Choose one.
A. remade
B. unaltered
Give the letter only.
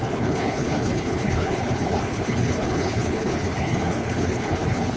A